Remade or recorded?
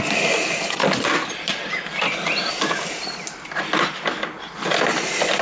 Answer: recorded